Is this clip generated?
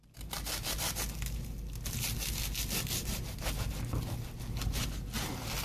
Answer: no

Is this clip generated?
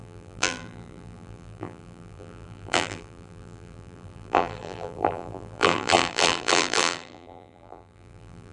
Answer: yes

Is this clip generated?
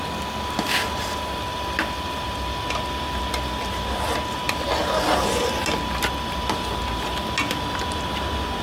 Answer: no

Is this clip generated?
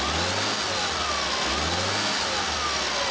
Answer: no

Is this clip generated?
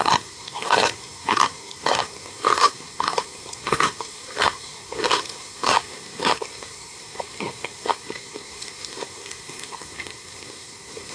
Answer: yes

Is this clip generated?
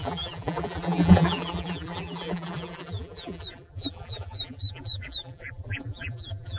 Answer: yes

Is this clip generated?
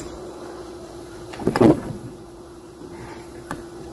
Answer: yes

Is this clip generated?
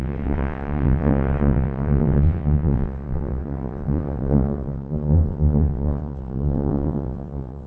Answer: yes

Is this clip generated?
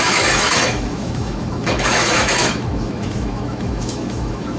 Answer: yes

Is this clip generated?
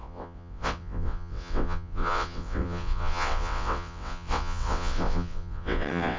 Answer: yes